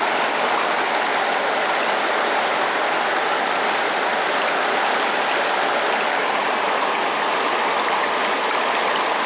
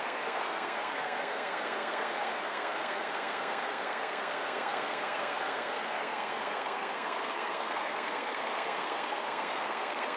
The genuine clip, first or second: first